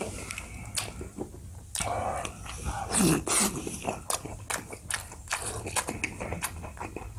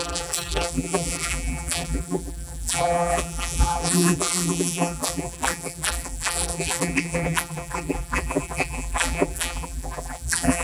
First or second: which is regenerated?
second